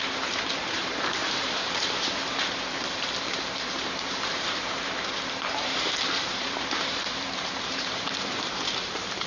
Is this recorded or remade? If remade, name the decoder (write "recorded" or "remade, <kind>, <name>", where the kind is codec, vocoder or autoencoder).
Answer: remade, vocoder, BigVGAN v2